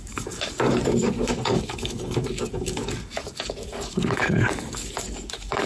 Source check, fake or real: fake